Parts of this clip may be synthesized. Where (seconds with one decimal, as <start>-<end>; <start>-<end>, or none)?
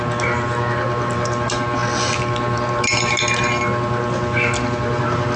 none